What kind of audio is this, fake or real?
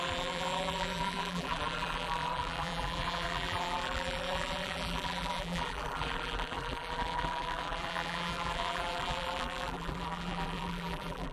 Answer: fake